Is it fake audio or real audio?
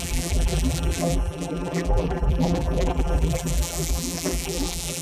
fake